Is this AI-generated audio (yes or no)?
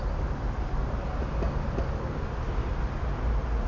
no